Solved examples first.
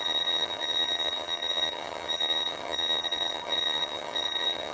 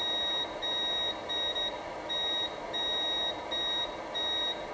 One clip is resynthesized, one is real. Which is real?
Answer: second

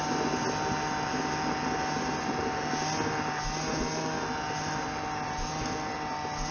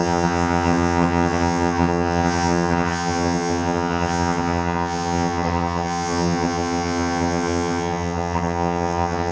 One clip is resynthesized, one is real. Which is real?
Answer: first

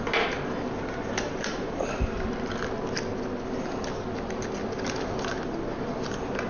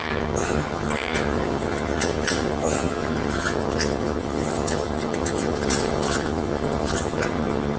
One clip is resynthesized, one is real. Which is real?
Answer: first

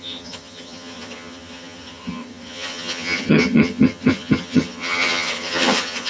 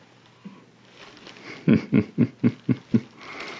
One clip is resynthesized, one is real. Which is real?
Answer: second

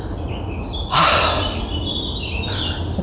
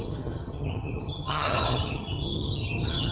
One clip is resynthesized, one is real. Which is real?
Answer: first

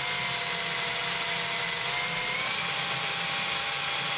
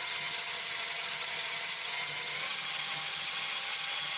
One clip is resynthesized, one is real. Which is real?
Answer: first